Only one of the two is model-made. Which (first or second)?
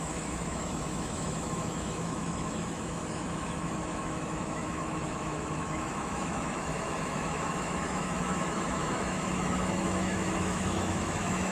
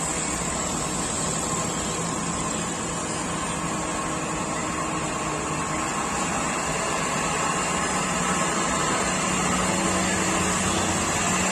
first